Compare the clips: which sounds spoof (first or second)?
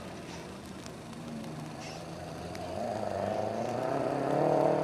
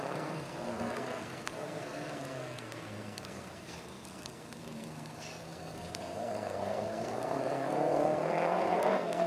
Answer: second